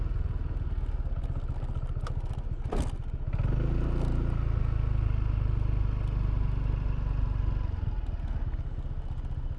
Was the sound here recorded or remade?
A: recorded